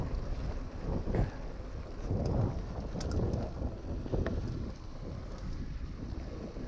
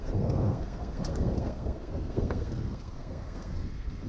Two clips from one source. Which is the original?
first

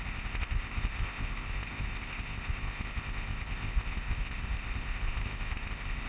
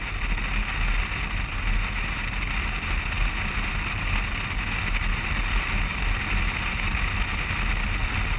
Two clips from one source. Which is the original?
second